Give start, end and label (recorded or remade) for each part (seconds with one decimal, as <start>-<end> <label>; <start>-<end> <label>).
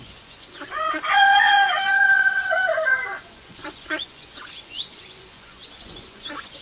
0.0-6.6 remade